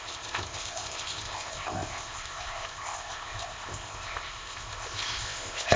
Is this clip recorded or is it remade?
remade